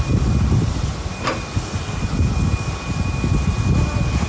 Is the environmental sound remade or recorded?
remade